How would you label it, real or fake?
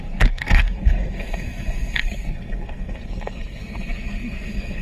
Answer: fake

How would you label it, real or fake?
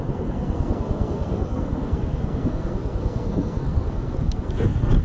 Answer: fake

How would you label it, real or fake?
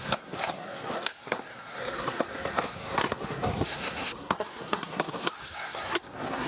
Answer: fake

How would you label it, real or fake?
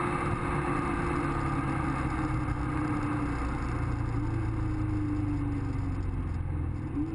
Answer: real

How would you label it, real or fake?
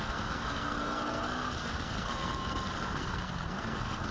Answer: fake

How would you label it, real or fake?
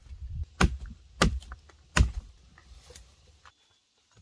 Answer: real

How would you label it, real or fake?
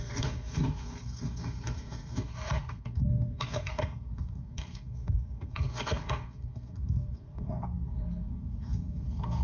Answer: fake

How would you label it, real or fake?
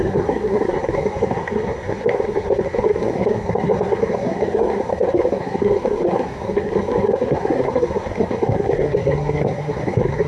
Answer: fake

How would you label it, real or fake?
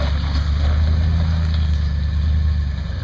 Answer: real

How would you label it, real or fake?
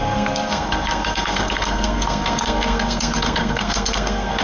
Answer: fake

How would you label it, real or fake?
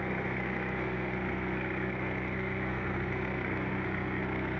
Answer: fake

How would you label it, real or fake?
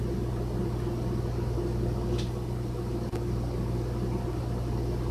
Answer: real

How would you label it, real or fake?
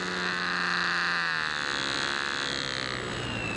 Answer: real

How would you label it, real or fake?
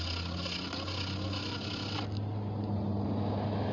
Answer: real